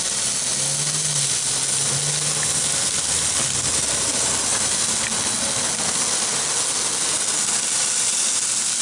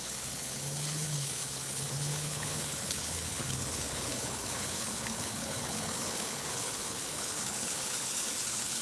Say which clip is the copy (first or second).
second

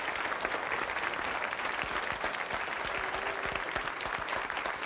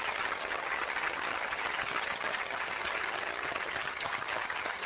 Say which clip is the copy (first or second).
second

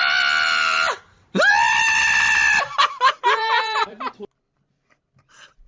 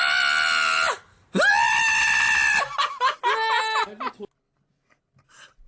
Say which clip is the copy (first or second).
first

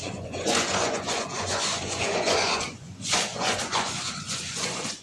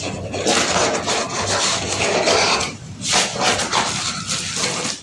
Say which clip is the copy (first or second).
first